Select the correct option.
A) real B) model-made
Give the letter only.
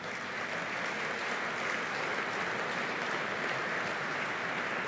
A